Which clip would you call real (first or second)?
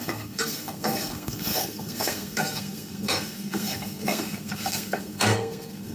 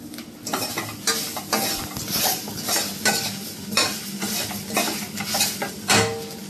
second